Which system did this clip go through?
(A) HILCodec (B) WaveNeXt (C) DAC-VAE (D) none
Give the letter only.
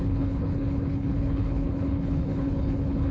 A